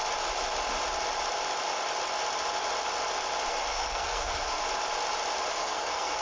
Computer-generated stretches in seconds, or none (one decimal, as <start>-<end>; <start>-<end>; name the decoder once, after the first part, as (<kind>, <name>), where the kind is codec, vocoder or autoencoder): 3.5-4.6 (codec, SNAC); 5.5-6.2